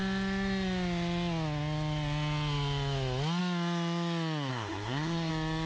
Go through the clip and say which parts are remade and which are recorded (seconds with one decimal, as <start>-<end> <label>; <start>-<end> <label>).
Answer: 0.0-4.5 recorded; 4.5-5.3 remade; 5.3-5.7 recorded